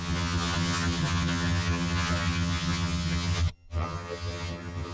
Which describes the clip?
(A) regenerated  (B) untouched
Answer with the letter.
A